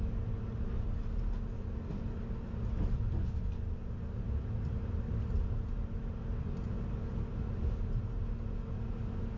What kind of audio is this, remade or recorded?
recorded